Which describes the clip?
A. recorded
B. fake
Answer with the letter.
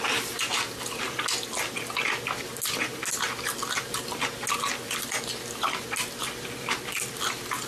A